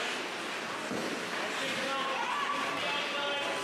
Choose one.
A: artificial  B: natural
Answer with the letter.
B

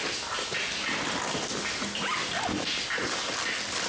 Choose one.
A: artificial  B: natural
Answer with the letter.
B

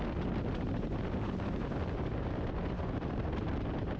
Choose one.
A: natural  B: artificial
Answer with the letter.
A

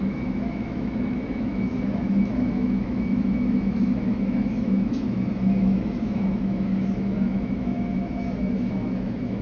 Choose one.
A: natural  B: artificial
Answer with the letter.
B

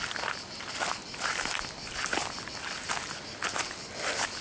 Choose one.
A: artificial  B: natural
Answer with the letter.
B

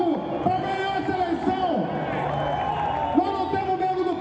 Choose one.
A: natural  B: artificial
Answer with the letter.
A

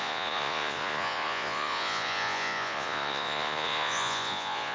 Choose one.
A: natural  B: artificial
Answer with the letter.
B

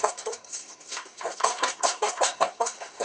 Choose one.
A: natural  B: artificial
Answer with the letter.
B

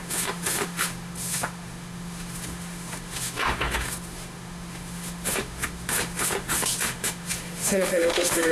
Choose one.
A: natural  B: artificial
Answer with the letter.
B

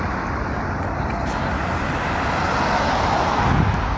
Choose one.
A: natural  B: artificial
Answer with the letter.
A